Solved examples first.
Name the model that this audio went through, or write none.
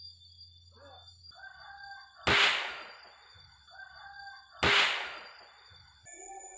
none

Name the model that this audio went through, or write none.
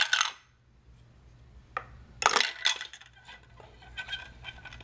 none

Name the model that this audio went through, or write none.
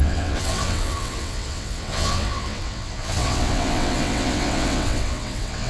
vocoder, WaveNeXt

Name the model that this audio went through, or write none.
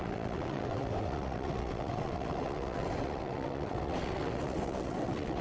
vocoder, WaveNeXt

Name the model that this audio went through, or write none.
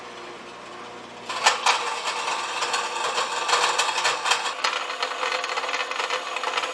none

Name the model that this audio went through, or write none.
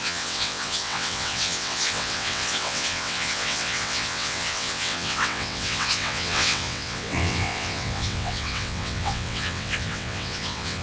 vocoder, WaveNeXt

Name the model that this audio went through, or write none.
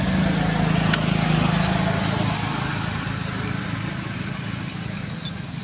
none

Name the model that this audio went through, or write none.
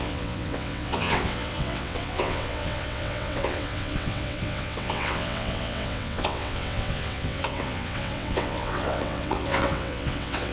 vocoder, WaveNeXt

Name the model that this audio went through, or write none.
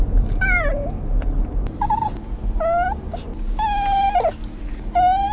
none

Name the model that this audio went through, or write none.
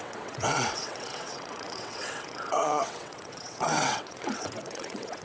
vocoder, WaveNeXt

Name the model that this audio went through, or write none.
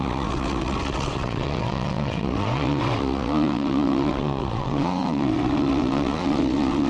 vocoder, WaveNeXt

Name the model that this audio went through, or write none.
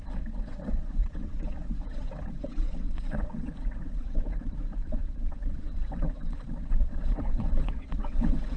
vocoder, WaveNeXt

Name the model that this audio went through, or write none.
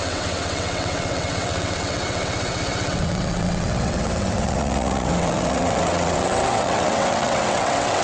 vocoder, WaveNeXt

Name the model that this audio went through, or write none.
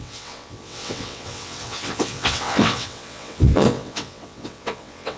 vocoder, WaveNeXt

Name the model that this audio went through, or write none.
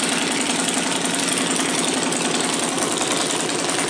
none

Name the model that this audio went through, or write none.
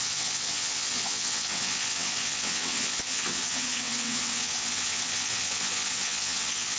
vocoder, WaveNeXt